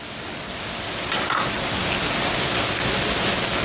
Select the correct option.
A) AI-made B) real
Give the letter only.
B